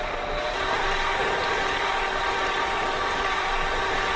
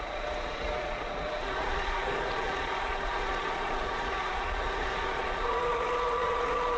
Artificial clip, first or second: second